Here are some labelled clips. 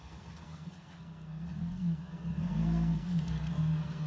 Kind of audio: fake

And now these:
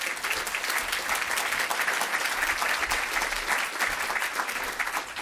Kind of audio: real